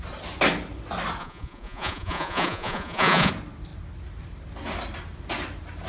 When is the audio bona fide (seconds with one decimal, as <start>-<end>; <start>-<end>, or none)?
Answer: 0.0-1.2; 3.3-5.9